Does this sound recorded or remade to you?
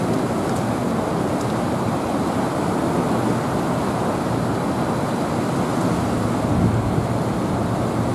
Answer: recorded